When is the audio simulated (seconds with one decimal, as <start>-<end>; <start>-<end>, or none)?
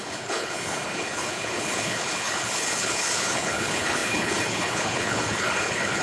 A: 0.0-6.0